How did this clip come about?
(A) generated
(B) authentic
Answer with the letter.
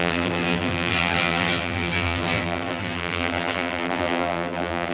A